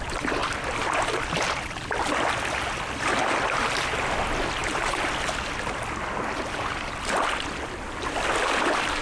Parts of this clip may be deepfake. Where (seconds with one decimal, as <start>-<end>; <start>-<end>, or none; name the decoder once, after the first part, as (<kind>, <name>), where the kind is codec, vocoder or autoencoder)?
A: 4.6-5.1 (vocoder, BigVGAN v2)

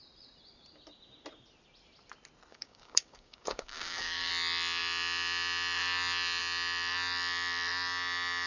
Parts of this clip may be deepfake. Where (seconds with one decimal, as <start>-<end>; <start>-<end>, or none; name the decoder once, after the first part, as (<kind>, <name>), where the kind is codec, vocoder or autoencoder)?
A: 2.5-4.3 (codec, DAC)

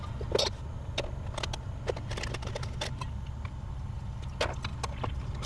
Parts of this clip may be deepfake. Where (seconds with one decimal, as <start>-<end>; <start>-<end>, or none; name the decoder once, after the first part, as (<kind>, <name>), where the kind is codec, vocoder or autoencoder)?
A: none

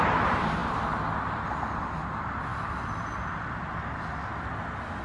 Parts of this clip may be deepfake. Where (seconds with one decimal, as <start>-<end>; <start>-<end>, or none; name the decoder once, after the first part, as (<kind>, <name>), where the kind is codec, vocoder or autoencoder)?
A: none